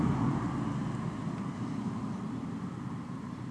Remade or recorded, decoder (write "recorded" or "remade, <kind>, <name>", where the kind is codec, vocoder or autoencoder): remade, vocoder, BigVGAN v2